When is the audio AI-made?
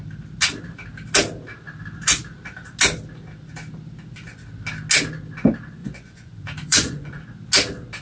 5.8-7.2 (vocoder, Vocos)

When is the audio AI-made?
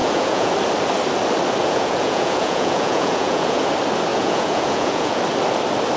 0.0-0.5 (vocoder, Vocos); 1.6-3.6; 4.1-5.2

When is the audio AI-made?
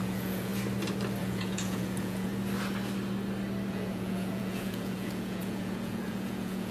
0.0-0.5 (vocoder, Vocos); 1.2-2.3; 3.7-6.7